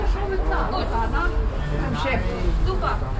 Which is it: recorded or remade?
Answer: recorded